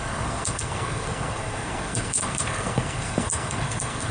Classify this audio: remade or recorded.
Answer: remade